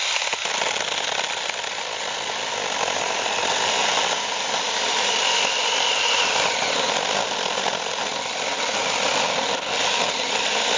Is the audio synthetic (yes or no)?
no